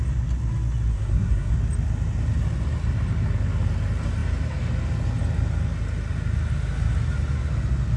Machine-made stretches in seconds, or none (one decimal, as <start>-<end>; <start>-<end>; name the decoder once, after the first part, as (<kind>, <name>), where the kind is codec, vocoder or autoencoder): 0.9-1.5 (codec, SNAC)